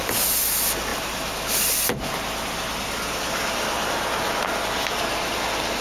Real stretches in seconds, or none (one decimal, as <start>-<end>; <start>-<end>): 0.0-5.8